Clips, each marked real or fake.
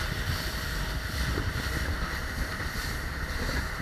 real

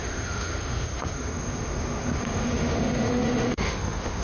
fake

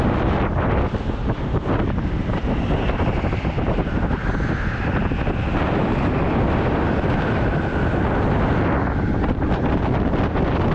real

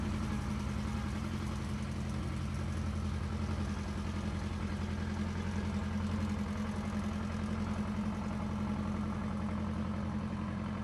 real